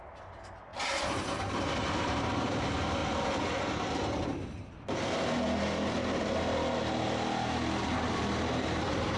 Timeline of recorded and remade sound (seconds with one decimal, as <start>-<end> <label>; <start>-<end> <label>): 0.0-3.0 remade; 3.0-8.1 recorded; 8.1-9.2 remade